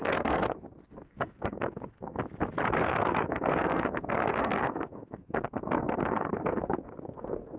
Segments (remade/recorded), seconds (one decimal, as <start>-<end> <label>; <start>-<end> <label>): 0.0-2.2 remade; 2.2-2.8 recorded; 2.8-7.6 remade